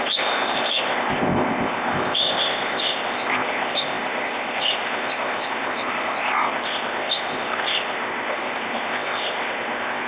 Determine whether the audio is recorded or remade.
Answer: remade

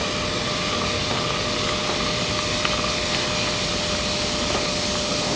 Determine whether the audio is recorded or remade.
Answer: recorded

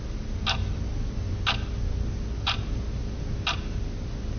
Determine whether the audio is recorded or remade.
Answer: recorded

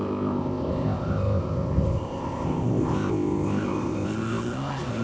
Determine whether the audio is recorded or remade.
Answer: remade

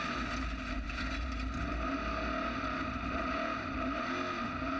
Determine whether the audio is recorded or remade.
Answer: recorded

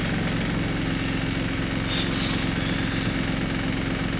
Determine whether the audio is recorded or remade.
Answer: recorded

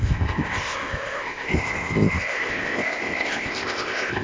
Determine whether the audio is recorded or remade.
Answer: remade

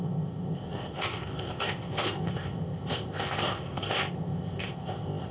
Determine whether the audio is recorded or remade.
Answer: remade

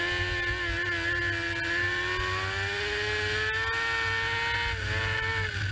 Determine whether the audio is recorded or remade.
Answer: recorded